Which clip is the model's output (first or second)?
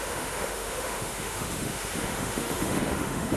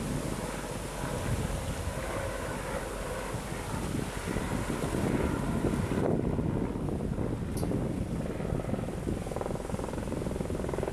first